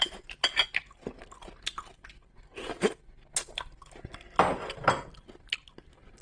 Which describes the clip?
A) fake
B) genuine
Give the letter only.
B